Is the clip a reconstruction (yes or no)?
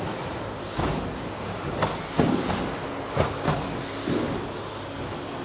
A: no